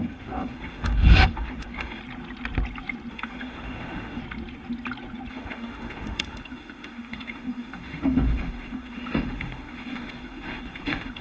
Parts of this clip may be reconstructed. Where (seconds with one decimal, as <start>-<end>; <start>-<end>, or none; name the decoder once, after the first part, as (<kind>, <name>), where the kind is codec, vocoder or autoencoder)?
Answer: 0.0-2.0 (autoencoder, DAC-VAE); 3.1-4.2; 5.3-11.2